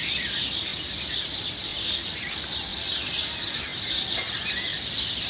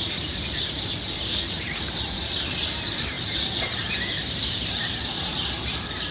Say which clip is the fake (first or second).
second